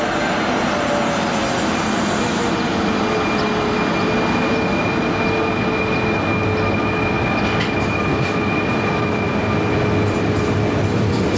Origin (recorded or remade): recorded